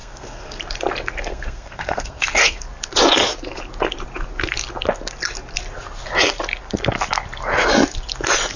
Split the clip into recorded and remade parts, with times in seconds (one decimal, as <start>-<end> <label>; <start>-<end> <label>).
0.0-0.6 remade; 0.6-1.3 recorded; 1.3-2.6 remade; 2.6-8.6 recorded